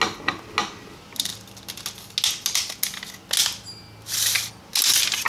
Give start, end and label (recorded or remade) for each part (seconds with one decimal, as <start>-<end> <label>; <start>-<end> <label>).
0.0-5.3 recorded